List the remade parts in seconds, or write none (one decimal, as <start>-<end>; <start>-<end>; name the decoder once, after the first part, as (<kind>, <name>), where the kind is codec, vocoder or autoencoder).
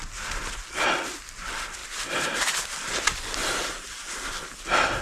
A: 1.8-2.6 (vocoder, BigVGAN v2); 3.4-4.0